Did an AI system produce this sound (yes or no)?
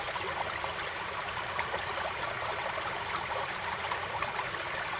no